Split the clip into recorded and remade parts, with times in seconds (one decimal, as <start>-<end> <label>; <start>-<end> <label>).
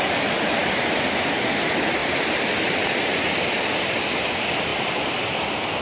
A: 0.0-0.6 recorded; 0.6-1.4 remade; 1.4-2.0 recorded; 2.0-3.1 remade; 3.1-4.7 recorded; 4.7-5.8 remade